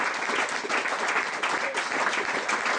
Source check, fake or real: real